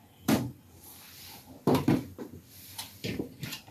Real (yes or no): no